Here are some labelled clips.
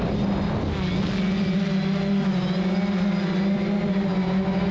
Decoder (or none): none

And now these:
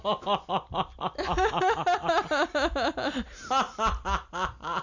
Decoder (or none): none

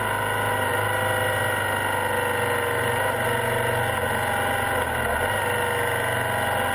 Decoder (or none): none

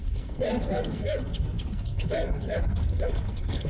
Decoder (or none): codec, SNAC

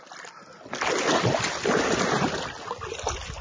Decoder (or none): none